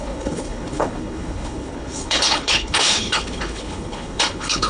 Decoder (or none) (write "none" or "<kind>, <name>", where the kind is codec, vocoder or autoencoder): codec, HILCodec